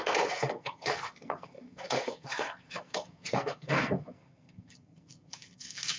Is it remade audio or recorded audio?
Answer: remade